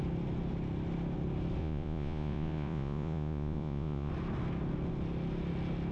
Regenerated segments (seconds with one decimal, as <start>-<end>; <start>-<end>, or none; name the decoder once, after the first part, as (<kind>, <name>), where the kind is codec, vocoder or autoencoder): 1.6-4.1 (vocoder, Vocos)

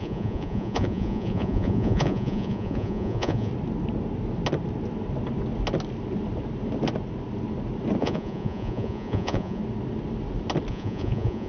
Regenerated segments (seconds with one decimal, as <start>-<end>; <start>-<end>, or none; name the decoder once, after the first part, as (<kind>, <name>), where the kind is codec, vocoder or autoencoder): 0.0-3.5 (vocoder, Vocos); 8.0-9.6; 10.7-11.5